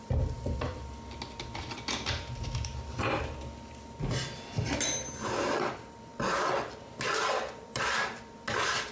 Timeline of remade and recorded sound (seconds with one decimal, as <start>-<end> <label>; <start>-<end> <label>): 0.0-8.9 recorded